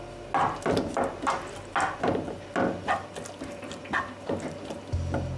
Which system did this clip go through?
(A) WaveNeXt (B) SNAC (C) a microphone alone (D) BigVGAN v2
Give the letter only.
C